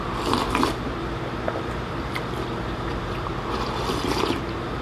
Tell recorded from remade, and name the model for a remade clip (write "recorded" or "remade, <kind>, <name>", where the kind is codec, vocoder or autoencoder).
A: recorded